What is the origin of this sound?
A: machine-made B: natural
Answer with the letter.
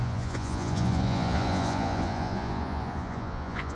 A